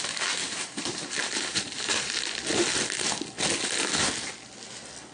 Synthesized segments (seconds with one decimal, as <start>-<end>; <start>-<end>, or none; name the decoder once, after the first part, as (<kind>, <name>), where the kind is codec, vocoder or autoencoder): 0.4-2.2 (vocoder, BigVGAN v2)